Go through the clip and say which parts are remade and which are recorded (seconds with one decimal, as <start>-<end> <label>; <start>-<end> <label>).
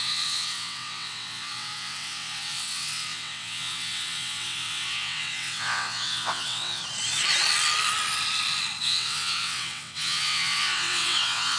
0.0-6.8 remade; 6.8-8.8 recorded; 8.8-11.6 remade